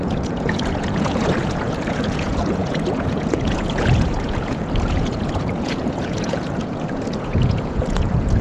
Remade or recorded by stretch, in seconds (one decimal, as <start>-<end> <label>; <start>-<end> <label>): 0.0-8.4 remade